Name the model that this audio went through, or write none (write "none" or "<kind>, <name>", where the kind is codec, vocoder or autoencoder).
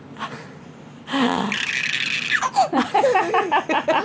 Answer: none